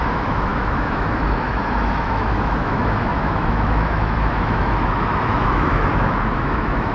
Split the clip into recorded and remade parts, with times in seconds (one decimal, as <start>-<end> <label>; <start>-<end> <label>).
0.0-6.9 remade